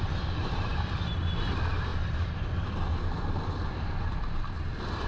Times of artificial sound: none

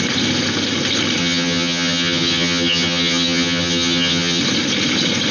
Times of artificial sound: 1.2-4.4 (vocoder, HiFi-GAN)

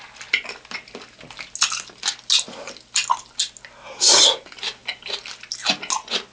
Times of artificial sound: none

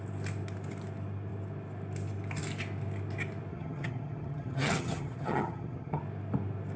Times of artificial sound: 3.5-6.0 (vocoder, HiFi-GAN)

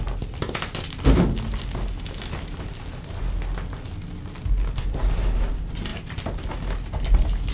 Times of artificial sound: none

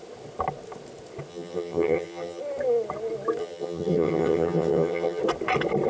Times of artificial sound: 1.3-2.4 (vocoder, HiFi-GAN); 3.4-5.2